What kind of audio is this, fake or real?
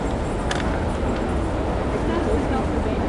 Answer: real